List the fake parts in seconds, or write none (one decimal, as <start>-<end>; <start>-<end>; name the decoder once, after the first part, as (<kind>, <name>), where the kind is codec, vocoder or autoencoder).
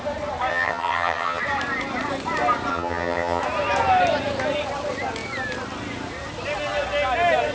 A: 0.5-1.4 (vocoder, HiFi-GAN); 2.7-3.4